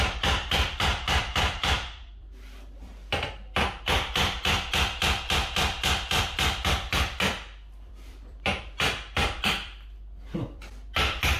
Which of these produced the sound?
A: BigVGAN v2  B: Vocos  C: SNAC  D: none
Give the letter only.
A